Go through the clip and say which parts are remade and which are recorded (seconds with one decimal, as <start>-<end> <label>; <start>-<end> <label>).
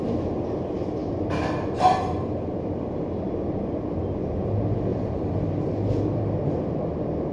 0.0-4.9 recorded; 4.9-6.2 remade; 6.2-7.3 recorded